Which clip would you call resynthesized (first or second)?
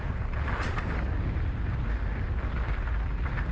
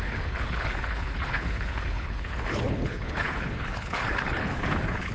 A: second